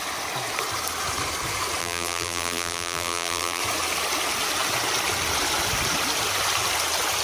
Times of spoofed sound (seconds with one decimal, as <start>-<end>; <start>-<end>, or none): 1.8-3.6